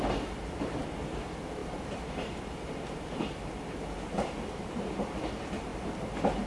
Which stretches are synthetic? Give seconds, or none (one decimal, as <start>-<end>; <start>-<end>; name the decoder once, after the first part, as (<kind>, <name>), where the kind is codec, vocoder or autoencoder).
none